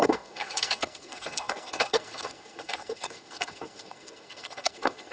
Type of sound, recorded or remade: remade